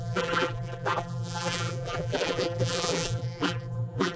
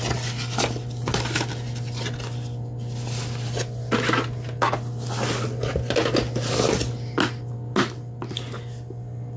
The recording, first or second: second